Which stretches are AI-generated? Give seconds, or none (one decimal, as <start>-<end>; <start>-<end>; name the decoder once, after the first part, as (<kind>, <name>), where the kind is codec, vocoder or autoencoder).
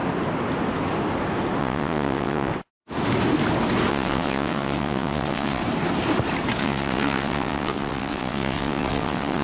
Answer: 1.6-2.5 (vocoder, WaveNeXt); 3.9-5.6; 6.6-9.4